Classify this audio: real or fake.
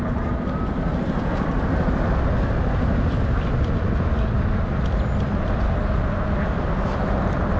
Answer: real